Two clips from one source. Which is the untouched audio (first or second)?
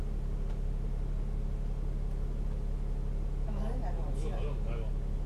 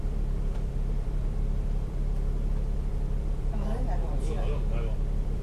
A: first